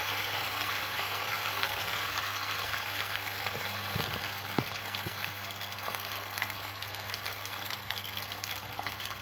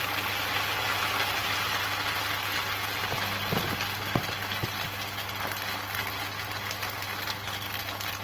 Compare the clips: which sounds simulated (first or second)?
first